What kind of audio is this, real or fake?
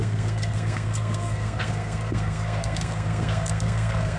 fake